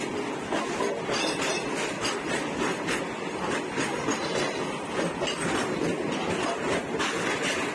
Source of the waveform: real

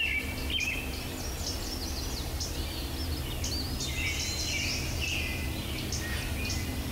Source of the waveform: real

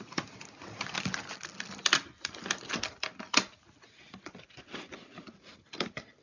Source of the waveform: real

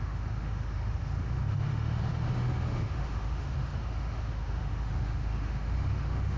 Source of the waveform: fake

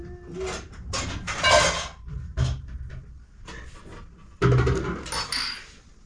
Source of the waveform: real